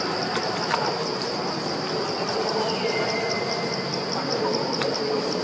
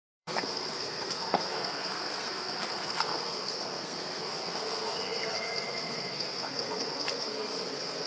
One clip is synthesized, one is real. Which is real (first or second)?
first